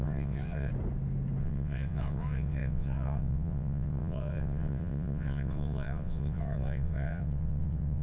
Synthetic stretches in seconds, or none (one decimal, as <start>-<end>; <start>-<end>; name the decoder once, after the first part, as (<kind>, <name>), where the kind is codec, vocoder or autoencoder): 0.0-0.7 (vocoder, WaveNeXt); 1.4-8.0